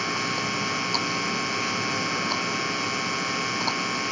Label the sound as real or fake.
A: real